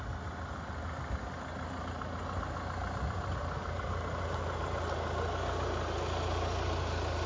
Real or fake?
real